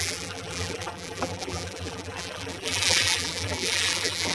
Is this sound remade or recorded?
remade